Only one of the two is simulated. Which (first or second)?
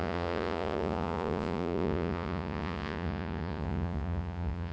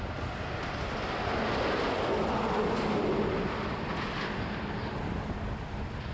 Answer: first